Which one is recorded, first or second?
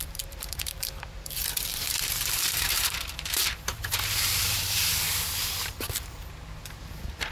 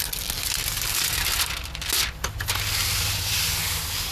second